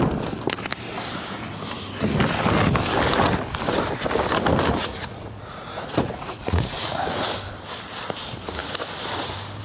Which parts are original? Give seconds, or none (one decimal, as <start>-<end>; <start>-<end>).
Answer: 0.0-4.8; 7.2-9.6